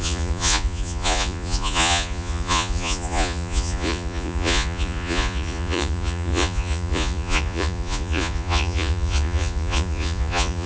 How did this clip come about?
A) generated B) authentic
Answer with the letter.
A